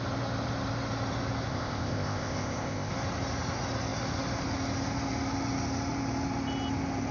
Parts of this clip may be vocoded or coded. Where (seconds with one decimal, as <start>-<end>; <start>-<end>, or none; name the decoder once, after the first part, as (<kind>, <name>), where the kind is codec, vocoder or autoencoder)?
1.5-2.9 (codec, ZipCodec)